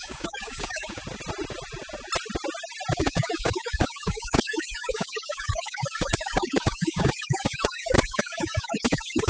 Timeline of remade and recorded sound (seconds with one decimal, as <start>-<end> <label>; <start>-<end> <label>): 0.0-1.0 remade; 1.0-2.9 recorded; 2.9-9.3 remade